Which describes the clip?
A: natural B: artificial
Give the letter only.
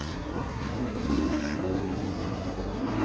B